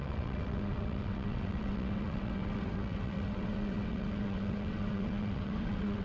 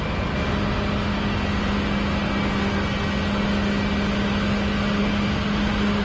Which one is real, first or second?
second